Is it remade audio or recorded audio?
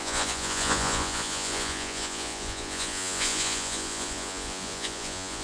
remade